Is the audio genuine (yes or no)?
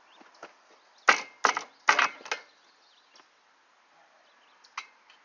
yes